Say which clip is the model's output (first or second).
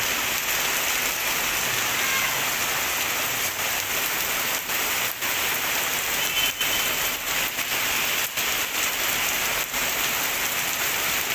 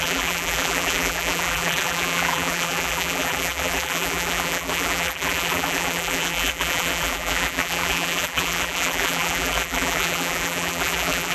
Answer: second